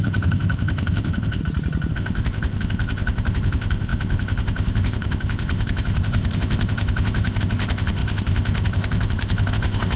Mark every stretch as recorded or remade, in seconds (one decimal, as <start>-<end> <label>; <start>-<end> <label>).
0.0-1.4 remade; 1.4-1.9 recorded; 1.9-10.0 remade